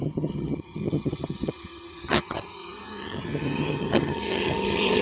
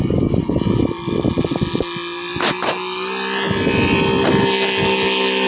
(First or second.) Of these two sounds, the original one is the second